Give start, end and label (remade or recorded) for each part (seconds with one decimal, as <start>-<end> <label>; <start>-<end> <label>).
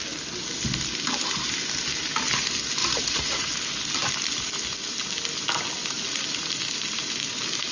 0.0-2.8 recorded; 2.8-3.5 remade; 3.5-7.7 recorded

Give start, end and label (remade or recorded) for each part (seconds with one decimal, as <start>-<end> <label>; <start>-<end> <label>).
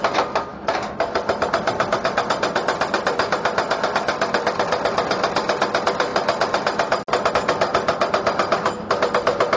0.0-9.6 recorded